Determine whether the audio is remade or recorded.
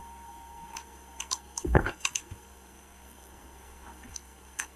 remade